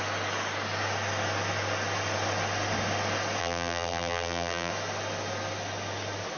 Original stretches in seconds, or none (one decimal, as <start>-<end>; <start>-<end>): 0.0-3.4; 4.7-6.4